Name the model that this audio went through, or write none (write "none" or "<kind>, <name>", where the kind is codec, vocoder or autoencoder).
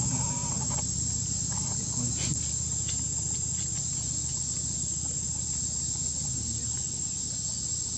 none